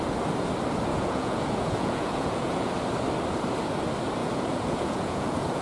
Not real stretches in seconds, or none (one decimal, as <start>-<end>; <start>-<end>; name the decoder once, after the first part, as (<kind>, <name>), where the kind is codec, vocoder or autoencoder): 0.9-2.7 (vocoder, Vocos); 4.2-5.6